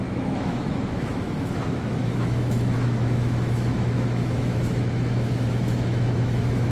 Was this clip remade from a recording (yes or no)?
yes